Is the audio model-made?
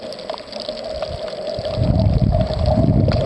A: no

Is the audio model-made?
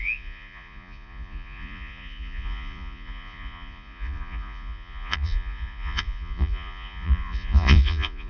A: yes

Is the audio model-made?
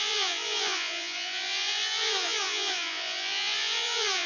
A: yes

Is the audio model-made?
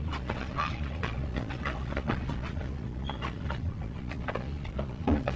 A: yes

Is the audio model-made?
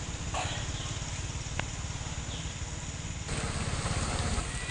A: no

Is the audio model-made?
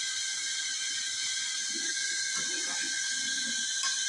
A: no